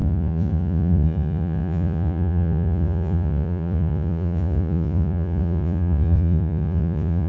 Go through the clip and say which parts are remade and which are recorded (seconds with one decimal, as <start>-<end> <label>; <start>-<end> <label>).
0.0-7.3 remade